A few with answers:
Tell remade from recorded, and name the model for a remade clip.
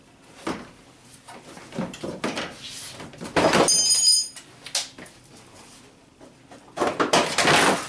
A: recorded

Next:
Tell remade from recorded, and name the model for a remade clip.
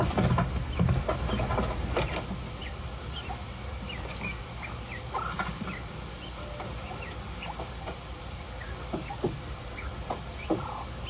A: recorded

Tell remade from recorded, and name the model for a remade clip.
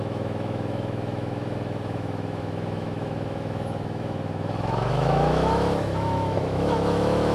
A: remade, autoencoder, DAC-VAE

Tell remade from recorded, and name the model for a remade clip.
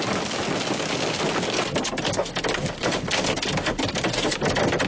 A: recorded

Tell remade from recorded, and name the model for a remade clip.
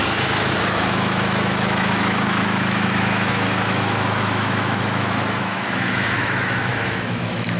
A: remade, autoencoder, DAC-VAE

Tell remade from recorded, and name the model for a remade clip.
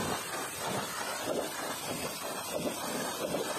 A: recorded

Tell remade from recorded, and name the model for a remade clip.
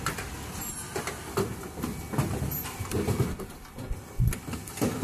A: recorded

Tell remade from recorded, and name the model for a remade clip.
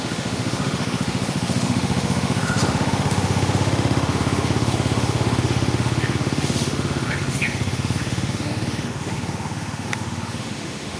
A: remade, autoencoder, DAC-VAE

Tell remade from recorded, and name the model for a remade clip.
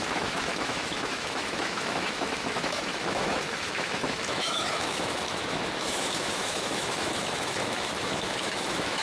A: remade, autoencoder, DAC-VAE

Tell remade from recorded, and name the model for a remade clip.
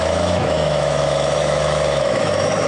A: remade, autoencoder, DAC-VAE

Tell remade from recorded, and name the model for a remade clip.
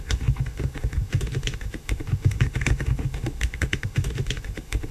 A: remade, autoencoder, DAC-VAE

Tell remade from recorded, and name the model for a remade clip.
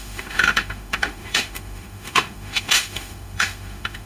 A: remade, autoencoder, DAC-VAE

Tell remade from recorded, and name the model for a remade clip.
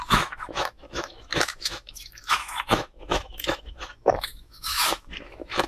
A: remade, autoencoder, DAC-VAE